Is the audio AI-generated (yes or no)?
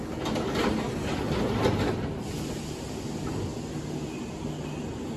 no